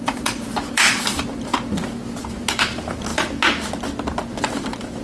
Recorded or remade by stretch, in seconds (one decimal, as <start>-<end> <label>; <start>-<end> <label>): 0.0-1.5 remade; 1.5-2.2 recorded; 2.2-3.1 remade; 3.1-4.4 recorded; 4.4-5.0 remade